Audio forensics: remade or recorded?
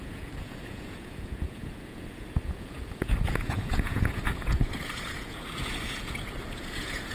remade